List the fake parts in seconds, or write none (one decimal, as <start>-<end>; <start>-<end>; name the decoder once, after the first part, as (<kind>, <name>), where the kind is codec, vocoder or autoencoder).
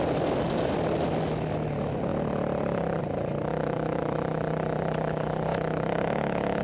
3.5-4.0 (autoencoder, DAC-VAE); 5.5-6.6